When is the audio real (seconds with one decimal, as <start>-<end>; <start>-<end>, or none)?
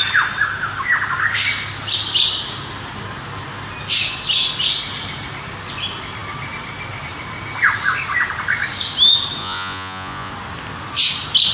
0.0-9.4; 10.3-11.5